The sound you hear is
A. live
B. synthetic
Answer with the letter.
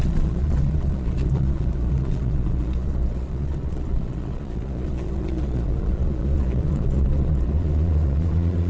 B